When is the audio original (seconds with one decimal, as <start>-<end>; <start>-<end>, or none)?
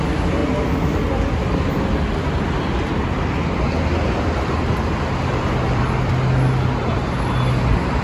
0.0-8.0